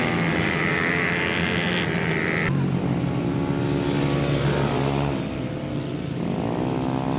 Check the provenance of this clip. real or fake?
real